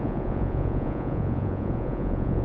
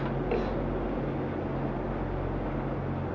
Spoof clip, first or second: first